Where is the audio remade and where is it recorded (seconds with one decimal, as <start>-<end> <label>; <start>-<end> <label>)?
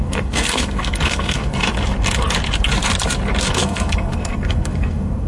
0.0-1.6 remade; 1.6-3.4 recorded; 3.4-5.3 remade